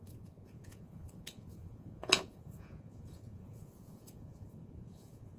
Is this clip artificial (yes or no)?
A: yes